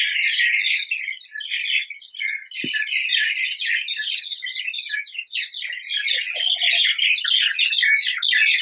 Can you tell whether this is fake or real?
real